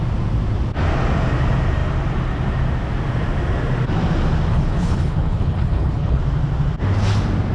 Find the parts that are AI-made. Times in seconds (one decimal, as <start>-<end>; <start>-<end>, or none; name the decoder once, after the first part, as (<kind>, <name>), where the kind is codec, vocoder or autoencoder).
4.5-6.2 (codec, HILCodec)